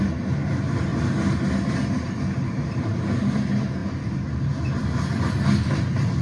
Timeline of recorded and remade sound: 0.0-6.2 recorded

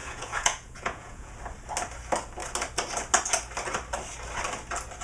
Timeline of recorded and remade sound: 0.0-1.3 remade; 1.3-5.0 recorded